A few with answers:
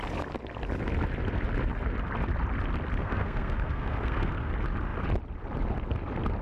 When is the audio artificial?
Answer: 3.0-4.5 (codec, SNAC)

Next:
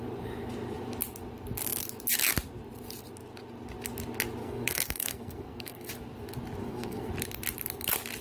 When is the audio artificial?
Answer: 4.4-5.9 (codec, SNAC); 6.6-7.1

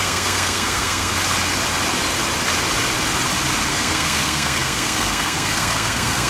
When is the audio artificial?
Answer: 0.0-1.1 (codec, SNAC); 3.7-6.3

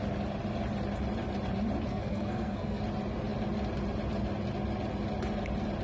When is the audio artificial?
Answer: 1.9-2.8 (codec, SNAC)